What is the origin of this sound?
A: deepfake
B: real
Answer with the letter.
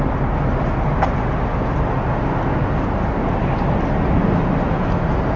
B